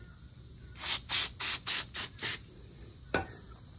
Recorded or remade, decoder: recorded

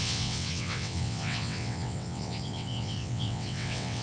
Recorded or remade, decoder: remade, vocoder, WaveNeXt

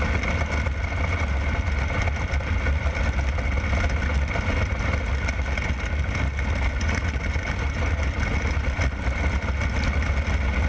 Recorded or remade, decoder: recorded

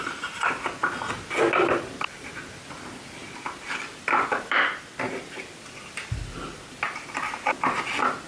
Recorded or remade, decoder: recorded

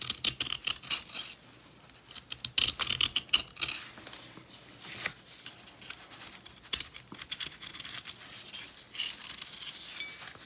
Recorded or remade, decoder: recorded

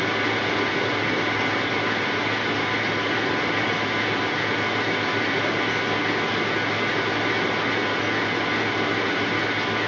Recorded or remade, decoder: recorded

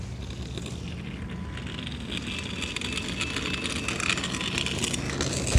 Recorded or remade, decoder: recorded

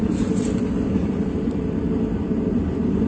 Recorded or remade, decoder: recorded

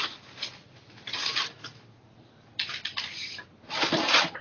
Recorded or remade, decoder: recorded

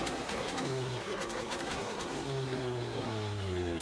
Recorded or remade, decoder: remade, codec, SNAC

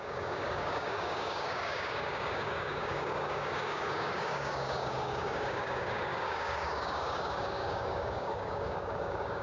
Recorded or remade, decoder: remade, codec, DAC